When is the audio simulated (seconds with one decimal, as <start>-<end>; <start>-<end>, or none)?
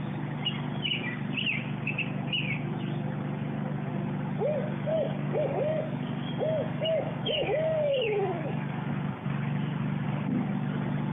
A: 4.9-8.9